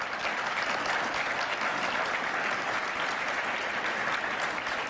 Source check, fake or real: real